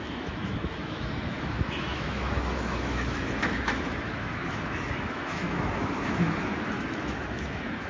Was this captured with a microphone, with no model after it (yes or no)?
no